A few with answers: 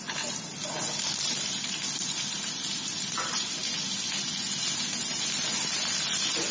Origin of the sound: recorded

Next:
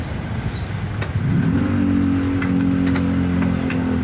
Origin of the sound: recorded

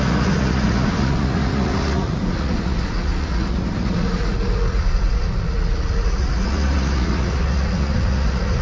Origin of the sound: remade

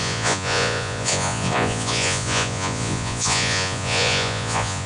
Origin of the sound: remade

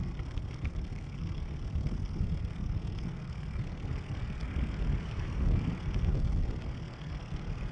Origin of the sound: remade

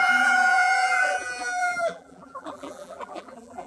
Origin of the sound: remade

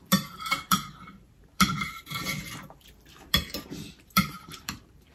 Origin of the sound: remade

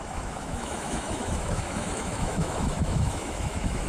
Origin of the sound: remade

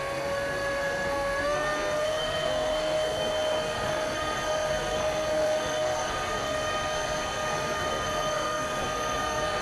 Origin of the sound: remade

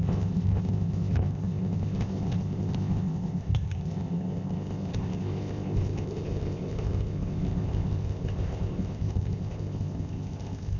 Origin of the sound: remade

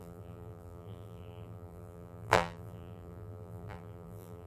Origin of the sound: remade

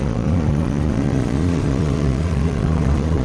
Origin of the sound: remade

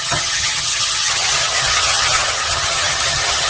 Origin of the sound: remade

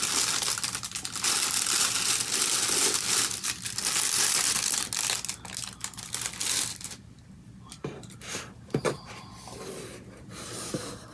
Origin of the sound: recorded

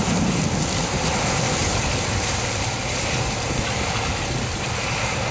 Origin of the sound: recorded